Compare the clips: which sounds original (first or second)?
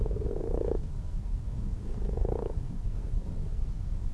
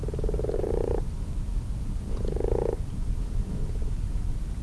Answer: second